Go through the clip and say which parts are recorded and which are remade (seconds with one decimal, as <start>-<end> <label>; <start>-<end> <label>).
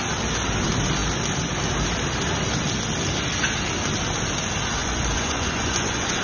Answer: 0.0-4.8 recorded; 4.8-6.2 remade